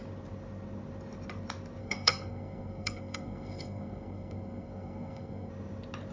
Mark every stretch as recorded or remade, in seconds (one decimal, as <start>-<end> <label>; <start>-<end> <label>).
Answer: 0.0-1.8 recorded; 1.8-5.5 remade; 5.5-6.1 recorded